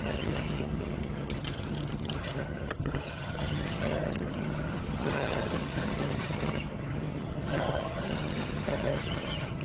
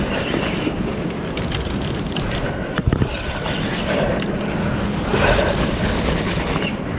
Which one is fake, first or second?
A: first